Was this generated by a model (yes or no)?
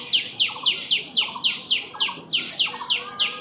no